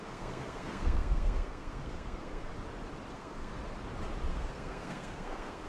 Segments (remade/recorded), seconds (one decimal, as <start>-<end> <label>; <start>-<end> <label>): 0.0-2.5 remade; 2.5-3.1 recorded; 3.1-3.5 remade; 3.5-4.3 recorded; 4.3-5.7 remade